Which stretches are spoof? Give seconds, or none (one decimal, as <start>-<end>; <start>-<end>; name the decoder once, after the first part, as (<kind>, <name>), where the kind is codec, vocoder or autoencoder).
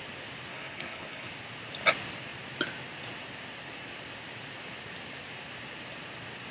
0.5-1.3 (codec, HILCodec)